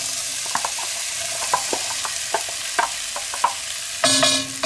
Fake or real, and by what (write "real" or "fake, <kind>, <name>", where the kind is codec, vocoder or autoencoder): real